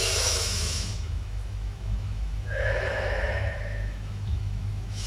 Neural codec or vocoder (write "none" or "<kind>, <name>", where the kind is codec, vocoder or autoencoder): autoencoder, DAC-VAE